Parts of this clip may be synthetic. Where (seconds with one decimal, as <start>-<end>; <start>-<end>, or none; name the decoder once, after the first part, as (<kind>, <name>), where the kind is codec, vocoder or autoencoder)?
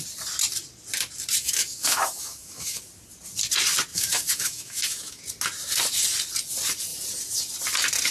1.4-2.8 (autoencoder, DAC-VAE); 3.9-5.2